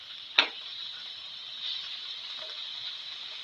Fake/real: fake